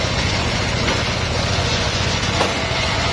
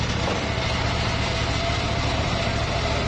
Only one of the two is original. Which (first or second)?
second